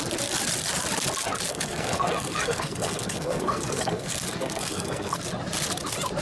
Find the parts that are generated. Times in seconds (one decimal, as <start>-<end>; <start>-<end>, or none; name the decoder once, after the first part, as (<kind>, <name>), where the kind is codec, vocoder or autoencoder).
1.5-5.2 (codec, SNAC)